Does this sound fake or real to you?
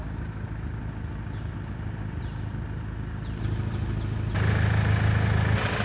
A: real